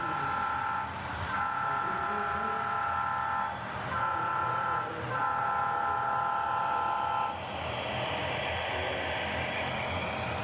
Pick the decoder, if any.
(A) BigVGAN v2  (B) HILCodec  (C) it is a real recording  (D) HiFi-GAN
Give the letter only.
C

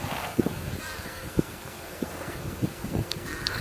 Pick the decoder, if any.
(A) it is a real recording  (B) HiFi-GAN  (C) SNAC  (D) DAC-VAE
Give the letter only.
C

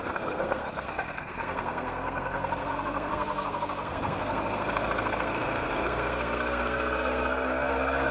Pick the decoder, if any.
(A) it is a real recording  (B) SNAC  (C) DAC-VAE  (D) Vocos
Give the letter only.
B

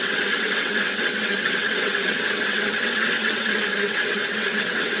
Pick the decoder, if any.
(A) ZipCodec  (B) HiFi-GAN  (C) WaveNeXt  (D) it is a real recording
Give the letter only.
C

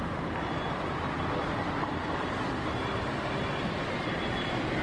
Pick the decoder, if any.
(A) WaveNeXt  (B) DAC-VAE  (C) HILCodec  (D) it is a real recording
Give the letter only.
D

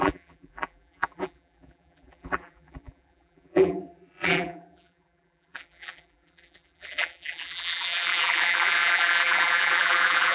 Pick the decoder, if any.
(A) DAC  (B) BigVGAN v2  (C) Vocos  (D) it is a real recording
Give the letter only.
B